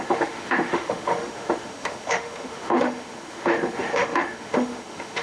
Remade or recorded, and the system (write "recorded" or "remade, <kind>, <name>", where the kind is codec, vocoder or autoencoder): remade, autoencoder, DAC-VAE